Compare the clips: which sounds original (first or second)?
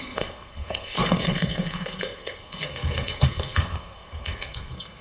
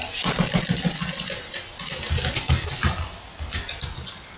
second